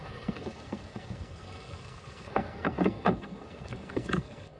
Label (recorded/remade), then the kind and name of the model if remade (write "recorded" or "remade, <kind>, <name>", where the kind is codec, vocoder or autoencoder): remade, codec, SNAC